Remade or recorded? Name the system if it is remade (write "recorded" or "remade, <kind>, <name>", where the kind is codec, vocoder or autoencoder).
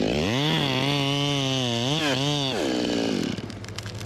recorded